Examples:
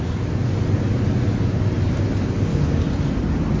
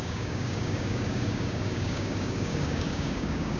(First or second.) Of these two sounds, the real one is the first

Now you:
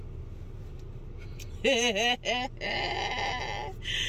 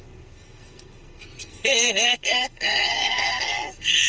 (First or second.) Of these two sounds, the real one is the first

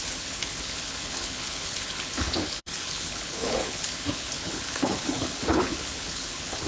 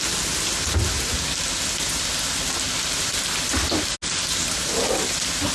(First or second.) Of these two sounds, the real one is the second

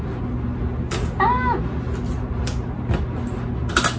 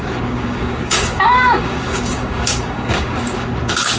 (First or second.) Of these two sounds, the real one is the first